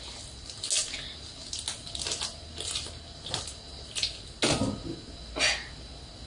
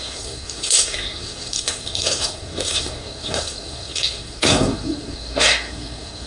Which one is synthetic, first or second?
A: second